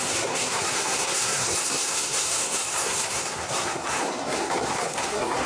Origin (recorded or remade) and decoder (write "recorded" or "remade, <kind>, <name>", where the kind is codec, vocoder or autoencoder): remade, codec, SNAC